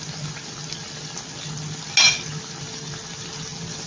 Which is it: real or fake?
real